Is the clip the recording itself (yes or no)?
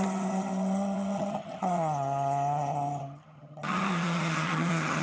no